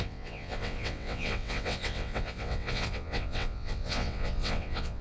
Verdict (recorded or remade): remade